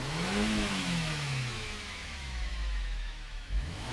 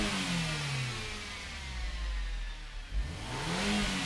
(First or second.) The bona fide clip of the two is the second